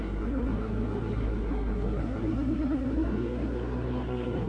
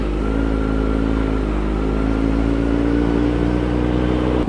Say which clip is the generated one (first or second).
first